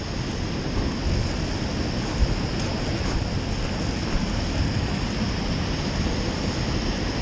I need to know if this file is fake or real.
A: real